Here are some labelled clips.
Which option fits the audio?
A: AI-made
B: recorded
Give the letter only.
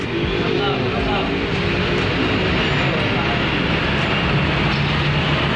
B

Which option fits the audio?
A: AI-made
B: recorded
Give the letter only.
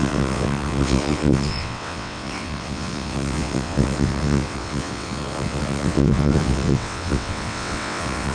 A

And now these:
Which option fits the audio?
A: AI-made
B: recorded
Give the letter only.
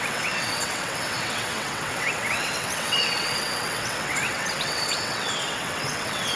A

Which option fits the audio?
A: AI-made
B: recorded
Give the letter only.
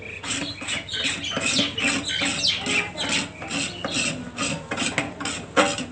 B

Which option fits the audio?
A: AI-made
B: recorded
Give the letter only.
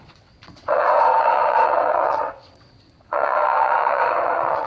A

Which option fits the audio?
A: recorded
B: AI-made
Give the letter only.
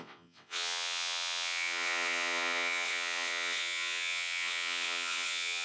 B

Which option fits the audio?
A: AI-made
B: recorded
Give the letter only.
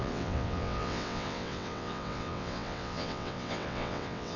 A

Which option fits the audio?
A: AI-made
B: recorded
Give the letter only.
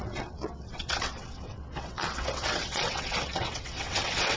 A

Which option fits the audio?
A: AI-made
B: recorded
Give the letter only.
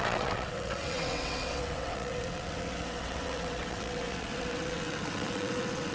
A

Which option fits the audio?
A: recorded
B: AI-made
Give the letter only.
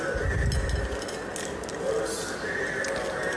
A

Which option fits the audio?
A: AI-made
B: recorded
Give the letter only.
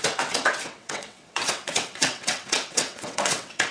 A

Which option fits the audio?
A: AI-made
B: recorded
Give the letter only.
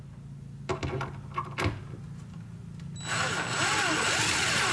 B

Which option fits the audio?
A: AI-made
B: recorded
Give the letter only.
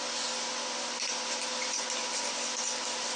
B